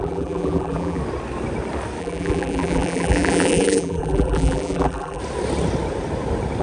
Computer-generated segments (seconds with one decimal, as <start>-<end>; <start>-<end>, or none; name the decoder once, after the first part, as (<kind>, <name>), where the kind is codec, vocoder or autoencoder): 0.0-1.0 (vocoder, BigVGAN v2); 2.0-5.2